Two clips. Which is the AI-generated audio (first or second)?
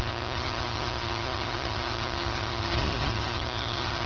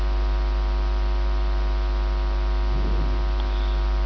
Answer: first